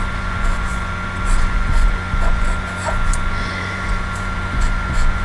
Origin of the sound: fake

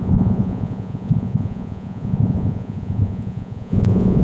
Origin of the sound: fake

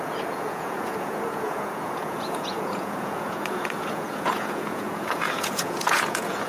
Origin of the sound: fake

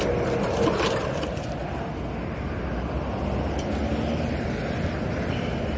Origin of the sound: real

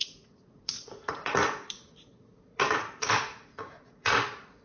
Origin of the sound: fake